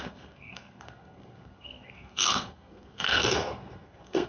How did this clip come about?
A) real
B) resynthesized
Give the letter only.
B